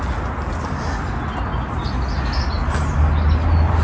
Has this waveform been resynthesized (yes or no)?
no